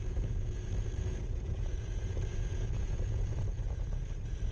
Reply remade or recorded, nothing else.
remade